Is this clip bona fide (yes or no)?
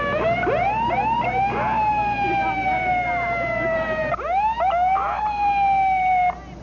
yes